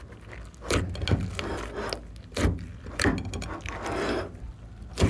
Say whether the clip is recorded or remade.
recorded